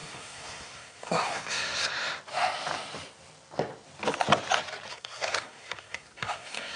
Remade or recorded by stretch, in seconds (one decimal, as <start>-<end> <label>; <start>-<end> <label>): 0.0-1.9 remade; 1.9-4.9 recorded; 4.9-6.8 remade